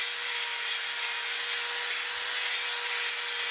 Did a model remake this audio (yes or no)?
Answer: no